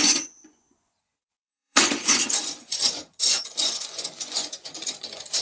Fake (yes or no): yes